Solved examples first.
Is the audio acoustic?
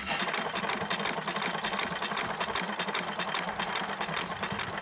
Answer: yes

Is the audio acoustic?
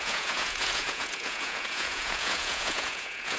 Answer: no